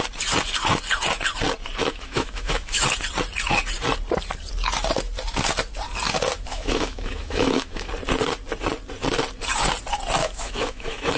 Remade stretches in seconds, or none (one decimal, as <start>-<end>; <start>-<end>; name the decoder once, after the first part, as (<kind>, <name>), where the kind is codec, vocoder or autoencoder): 1.8-2.8 (autoencoder, DAC-VAE); 6.5-7.9; 10.2-11.2